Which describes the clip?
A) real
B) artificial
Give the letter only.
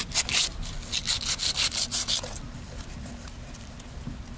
A